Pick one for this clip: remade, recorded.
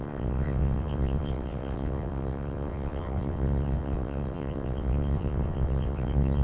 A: remade